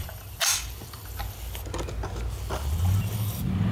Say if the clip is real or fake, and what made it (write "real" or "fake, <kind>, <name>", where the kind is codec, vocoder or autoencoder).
real